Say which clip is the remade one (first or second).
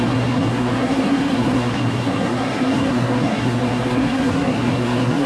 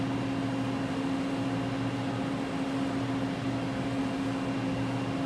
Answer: first